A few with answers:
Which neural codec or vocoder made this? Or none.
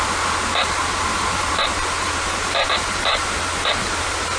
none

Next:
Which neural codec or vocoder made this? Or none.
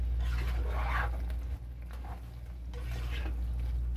none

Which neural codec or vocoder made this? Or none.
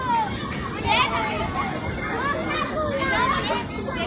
none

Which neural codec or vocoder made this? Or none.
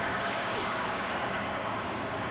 codec, DAC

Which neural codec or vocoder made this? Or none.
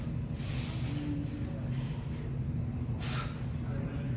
none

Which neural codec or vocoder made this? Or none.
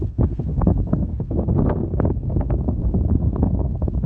codec, SNAC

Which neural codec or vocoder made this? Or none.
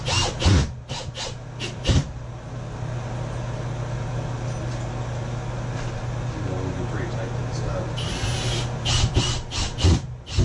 none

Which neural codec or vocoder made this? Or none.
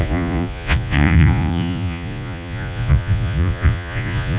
vocoder, Vocos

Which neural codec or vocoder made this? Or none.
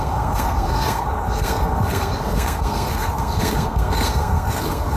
codec, SNAC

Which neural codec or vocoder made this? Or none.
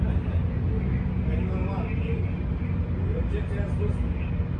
none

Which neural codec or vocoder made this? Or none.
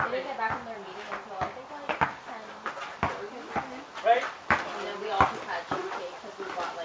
none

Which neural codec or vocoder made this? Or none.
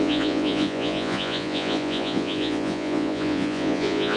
vocoder, Vocos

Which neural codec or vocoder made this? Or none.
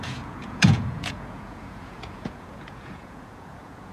vocoder, Vocos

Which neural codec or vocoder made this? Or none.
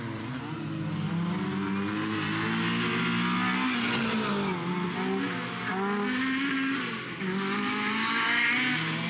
none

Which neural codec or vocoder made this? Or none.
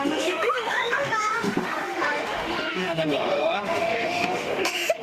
autoencoder, DAC-VAE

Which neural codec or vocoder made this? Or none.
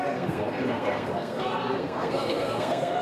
codec, SNAC